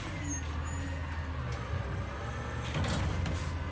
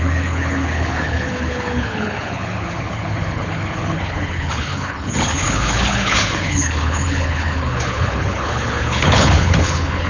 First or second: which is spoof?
second